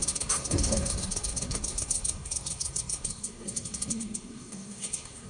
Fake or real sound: fake